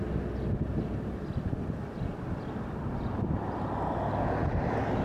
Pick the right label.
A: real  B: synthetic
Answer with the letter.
A